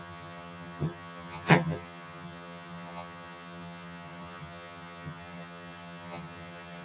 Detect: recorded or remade remade